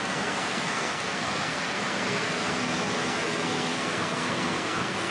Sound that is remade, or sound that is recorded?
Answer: remade